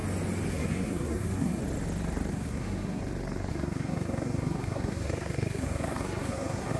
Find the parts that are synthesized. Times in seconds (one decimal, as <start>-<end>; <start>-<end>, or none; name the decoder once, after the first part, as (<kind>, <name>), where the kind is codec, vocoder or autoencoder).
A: 0.5-1.6 (codec, SNAC); 2.3-3.0; 3.5-6.8